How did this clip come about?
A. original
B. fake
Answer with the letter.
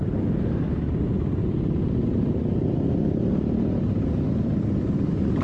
A